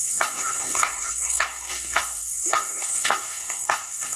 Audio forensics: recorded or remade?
remade